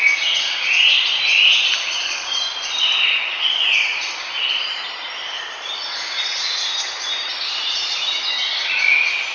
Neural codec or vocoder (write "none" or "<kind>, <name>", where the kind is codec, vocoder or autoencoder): none